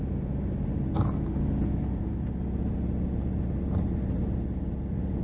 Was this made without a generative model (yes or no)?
yes